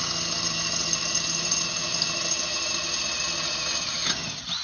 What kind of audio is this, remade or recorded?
recorded